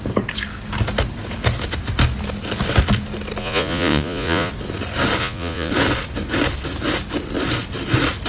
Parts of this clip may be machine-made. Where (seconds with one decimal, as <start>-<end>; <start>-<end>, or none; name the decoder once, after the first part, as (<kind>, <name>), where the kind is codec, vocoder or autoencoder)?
3.4-4.5 (vocoder, Vocos); 5.2-5.7